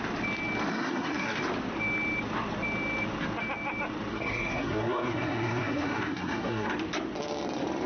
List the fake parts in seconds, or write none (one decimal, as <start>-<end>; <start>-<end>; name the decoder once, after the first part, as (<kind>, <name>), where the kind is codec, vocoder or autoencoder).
0.7-1.4 (codec, SNAC); 4.1-6.7